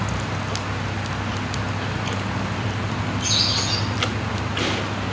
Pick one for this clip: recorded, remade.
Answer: recorded